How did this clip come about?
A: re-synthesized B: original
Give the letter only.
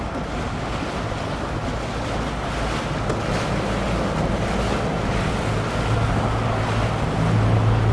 B